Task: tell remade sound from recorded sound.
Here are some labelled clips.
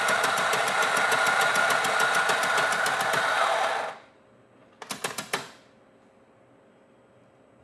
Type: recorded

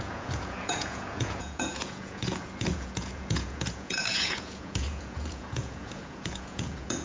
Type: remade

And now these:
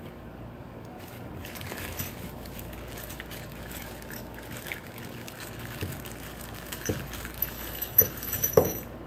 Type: remade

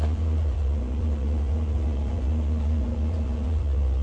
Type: remade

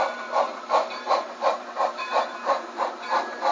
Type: remade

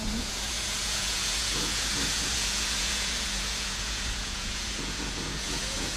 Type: remade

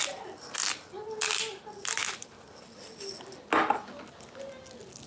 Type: recorded